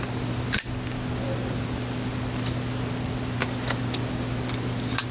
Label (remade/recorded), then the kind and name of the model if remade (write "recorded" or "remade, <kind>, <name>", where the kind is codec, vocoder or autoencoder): recorded